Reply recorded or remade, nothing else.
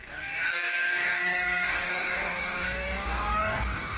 remade